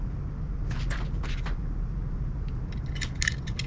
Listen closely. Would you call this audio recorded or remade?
recorded